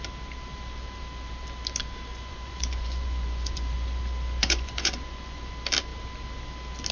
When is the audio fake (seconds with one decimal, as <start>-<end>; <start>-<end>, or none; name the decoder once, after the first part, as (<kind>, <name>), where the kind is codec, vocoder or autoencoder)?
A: 2.1-4.0 (vocoder, Vocos); 4.4-5.5